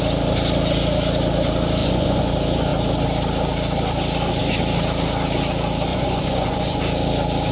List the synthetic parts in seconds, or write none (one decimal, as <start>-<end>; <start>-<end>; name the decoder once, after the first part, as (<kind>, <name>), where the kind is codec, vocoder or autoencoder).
1.8-2.3 (vocoder, Vocos); 5.9-6.8